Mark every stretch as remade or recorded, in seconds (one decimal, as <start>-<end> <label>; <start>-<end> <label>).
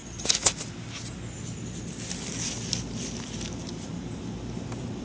0.0-5.0 recorded